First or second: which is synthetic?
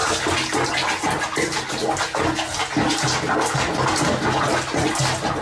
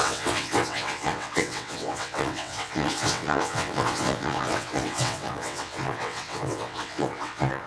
second